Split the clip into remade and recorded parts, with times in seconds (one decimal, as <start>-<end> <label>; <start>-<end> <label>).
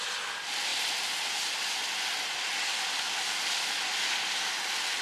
0.0-5.0 recorded